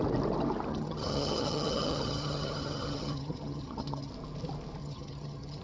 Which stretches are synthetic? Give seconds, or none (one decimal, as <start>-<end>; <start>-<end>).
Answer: 0.7-4.1; 4.8-5.6